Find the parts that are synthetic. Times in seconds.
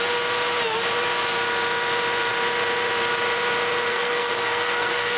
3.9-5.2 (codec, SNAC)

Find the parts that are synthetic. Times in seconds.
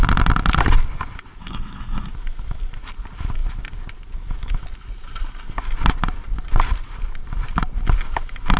1.4-2.1 (codec, SNAC)